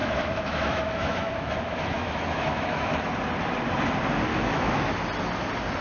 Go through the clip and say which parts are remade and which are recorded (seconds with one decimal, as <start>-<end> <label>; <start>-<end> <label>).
0.0-3.1 remade; 3.1-4.3 recorded; 4.3-5.0 remade; 5.0-5.8 recorded